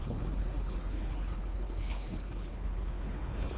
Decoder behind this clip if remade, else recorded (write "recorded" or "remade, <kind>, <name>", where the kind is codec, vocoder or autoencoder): remade, codec, HILCodec